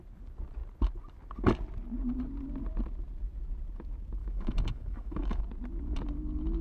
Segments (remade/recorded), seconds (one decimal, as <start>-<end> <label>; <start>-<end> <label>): 0.0-4.2 recorded; 4.2-5.4 remade; 5.4-6.6 recorded